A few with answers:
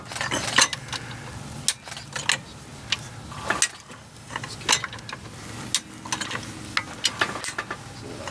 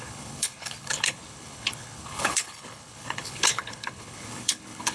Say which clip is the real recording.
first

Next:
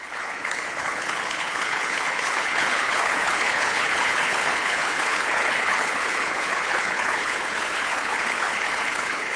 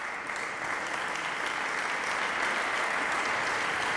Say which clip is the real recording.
second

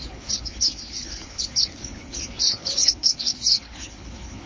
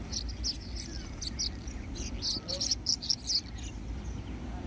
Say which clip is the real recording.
second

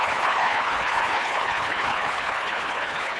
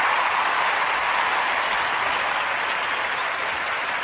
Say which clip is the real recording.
second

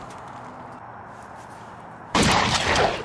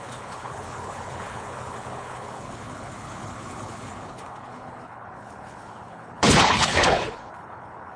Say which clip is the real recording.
first